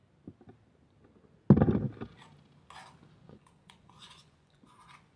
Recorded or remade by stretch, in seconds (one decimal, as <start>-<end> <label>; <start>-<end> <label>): 0.0-3.1 recorded; 3.1-5.2 remade